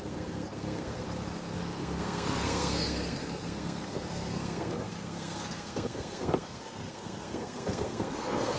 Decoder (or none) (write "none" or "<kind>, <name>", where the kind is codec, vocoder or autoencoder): codec, SNAC